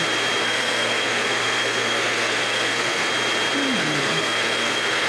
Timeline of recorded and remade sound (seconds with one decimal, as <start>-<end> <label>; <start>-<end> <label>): 0.0-0.4 recorded; 0.4-3.1 remade; 3.1-3.8 recorded; 3.8-5.1 remade